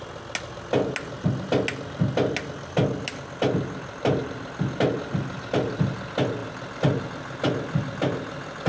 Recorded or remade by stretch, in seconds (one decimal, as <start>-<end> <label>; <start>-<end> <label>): 0.0-8.7 recorded